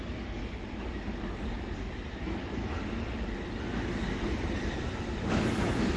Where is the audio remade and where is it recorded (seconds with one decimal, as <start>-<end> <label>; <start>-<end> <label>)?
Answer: 0.0-0.4 remade; 0.4-2.1 recorded; 2.1-2.7 remade; 2.7-5.0 recorded; 5.0-6.0 remade